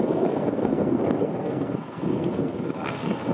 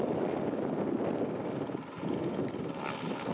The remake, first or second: first